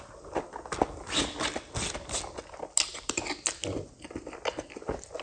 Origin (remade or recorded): recorded